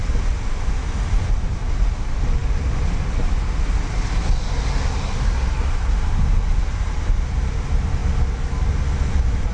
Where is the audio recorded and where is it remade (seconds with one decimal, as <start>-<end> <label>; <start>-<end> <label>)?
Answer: 0.0-9.5 recorded